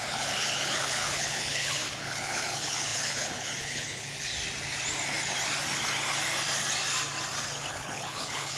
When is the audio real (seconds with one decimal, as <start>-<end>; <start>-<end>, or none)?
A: 4.3-7.7